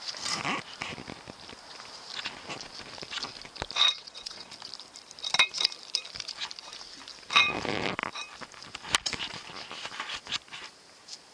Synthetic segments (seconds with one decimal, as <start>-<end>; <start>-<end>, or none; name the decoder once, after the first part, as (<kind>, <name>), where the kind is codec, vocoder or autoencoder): 3.9-4.5 (vocoder, WaveNeXt)